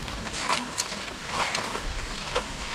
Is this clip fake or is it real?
fake